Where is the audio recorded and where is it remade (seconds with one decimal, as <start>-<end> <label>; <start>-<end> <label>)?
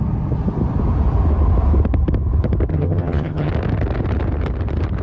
0.0-2.7 recorded; 2.7-3.5 remade; 3.5-5.0 recorded